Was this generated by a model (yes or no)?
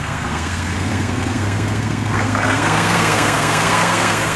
yes